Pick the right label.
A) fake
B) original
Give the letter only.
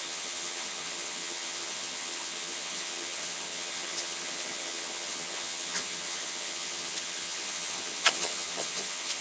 A